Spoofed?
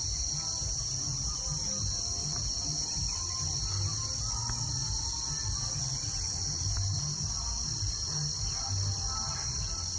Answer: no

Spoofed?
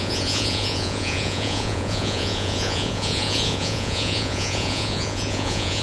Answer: yes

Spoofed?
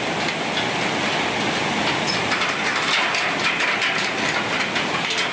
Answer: no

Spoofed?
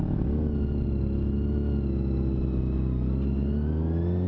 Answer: no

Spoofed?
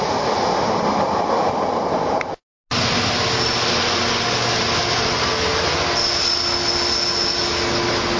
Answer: no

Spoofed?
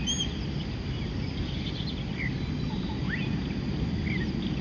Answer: no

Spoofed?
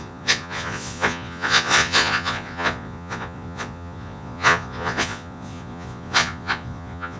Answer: yes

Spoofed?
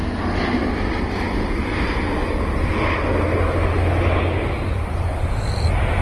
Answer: no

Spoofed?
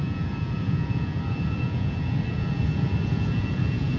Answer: yes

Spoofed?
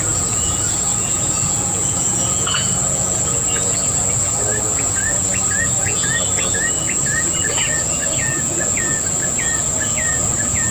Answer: yes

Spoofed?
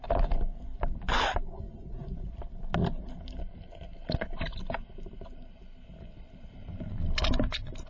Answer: no